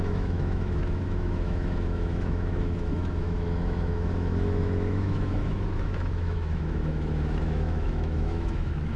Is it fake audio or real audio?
fake